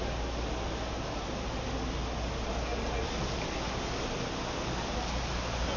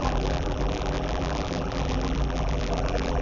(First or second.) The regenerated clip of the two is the second